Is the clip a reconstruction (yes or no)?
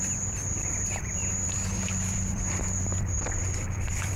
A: yes